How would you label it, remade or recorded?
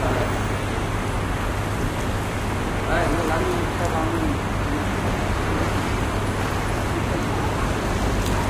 recorded